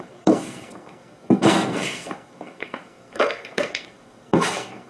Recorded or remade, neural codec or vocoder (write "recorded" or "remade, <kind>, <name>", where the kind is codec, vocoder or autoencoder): remade, codec, SNAC